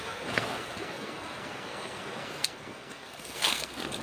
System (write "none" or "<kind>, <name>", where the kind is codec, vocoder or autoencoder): codec, SNAC